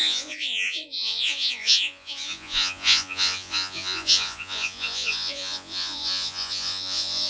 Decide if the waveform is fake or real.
fake